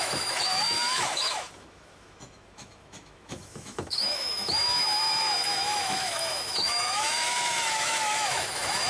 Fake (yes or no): yes